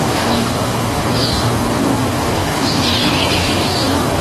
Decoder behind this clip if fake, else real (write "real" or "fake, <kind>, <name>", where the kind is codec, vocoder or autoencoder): fake, codec, DAC